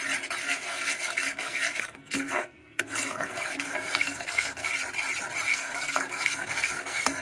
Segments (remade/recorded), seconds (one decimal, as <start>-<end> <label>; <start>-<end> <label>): 0.0-0.4 recorded; 0.4-4.7 remade; 4.7-5.5 recorded; 5.5-7.2 remade